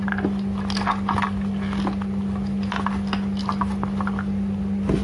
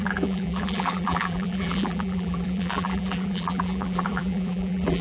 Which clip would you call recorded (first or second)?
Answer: first